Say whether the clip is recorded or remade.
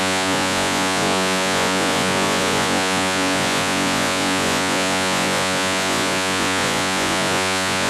remade